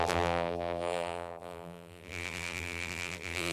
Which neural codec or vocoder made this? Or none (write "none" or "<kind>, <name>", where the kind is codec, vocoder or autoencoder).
vocoder, BigVGAN v2